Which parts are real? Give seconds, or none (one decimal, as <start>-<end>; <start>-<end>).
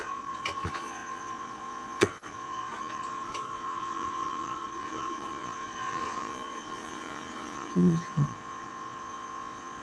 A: none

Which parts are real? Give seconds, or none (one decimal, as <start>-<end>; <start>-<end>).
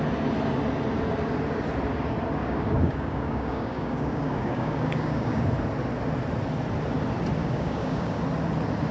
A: 0.0-2.4; 5.5-7.4; 8.2-8.9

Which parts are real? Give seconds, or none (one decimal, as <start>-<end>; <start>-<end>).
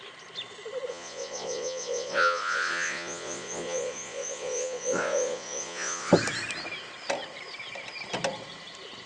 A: 0.0-0.9; 6.1-9.1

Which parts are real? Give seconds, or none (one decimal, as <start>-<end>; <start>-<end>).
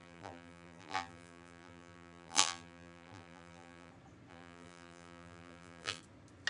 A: 3.9-4.3; 6.0-6.5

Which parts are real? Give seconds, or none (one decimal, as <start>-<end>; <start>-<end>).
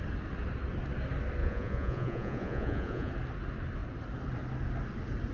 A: 0.0-1.4; 3.1-5.3